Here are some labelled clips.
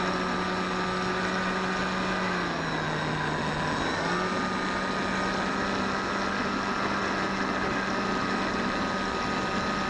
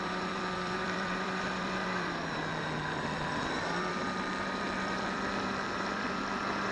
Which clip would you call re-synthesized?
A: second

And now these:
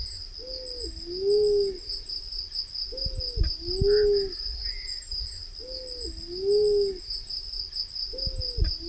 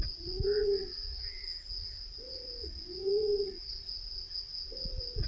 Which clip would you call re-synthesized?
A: second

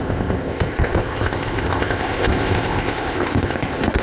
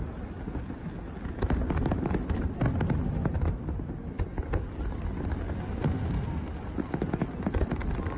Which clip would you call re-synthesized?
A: first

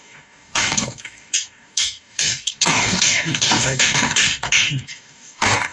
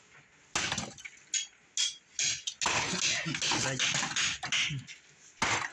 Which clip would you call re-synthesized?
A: first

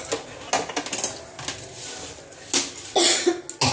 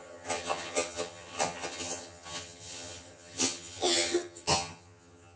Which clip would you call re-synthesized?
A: second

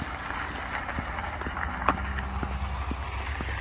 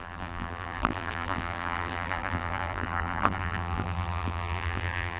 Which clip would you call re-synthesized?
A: second